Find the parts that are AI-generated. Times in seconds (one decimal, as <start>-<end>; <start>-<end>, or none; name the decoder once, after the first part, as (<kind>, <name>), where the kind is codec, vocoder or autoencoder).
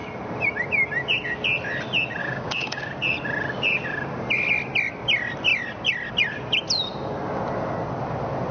2.2-2.8 (codec, DAC)